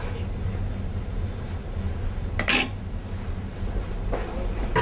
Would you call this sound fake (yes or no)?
no